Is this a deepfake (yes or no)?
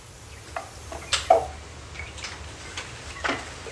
no